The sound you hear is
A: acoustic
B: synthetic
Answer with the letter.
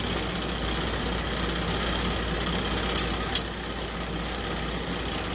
A